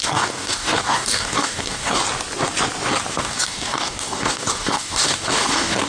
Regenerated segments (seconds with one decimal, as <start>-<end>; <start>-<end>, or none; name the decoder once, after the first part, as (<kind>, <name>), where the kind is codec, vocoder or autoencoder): 0.0-2.0 (codec, DAC); 3.1-5.9